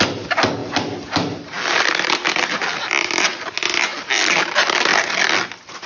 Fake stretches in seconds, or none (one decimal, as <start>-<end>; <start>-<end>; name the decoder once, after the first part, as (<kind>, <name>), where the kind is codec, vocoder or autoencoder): 0.6-3.4 (vocoder, BigVGAN v2); 3.9-4.4; 4.9-5.9